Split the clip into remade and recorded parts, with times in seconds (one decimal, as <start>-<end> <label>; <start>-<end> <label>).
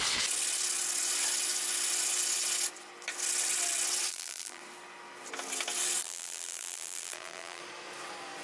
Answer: 0.0-4.1 recorded; 4.1-4.6 remade; 4.6-6.0 recorded; 6.0-7.6 remade; 7.6-8.4 recorded